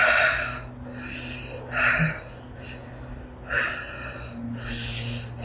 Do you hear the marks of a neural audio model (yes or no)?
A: no